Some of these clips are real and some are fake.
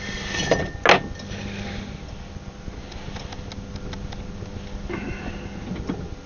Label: real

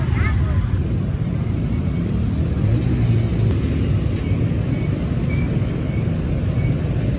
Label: real